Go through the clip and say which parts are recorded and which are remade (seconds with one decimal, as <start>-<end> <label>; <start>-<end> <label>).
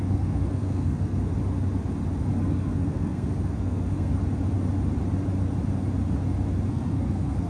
0.0-1.3 remade; 1.3-2.3 recorded; 2.3-4.1 remade; 4.1-6.7 recorded; 6.7-7.5 remade